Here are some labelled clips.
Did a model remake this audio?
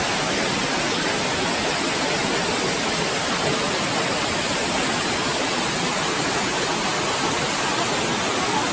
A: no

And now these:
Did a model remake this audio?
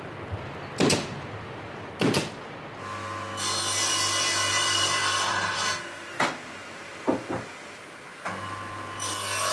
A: no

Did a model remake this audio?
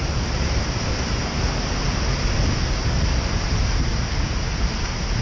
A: no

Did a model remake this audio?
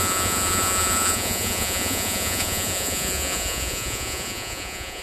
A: yes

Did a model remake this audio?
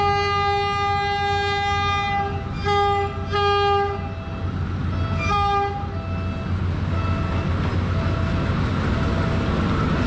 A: no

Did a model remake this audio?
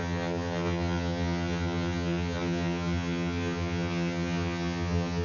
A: yes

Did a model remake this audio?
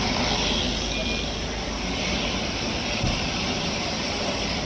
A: no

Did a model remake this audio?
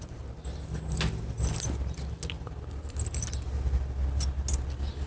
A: no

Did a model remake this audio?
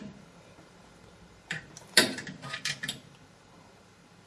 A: yes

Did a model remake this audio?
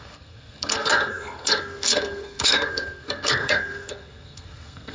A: yes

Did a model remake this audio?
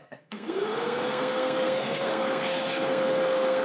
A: yes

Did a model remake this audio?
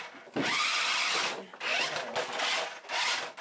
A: no